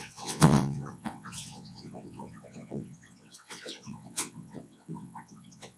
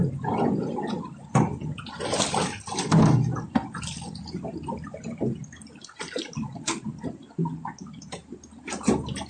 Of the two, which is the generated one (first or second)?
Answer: first